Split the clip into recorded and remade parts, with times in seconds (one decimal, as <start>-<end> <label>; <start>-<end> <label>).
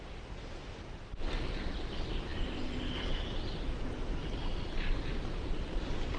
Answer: 0.0-6.2 recorded